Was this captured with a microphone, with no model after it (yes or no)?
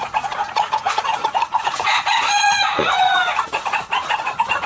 no